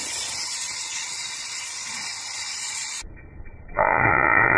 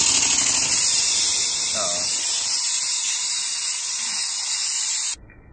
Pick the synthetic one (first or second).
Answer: first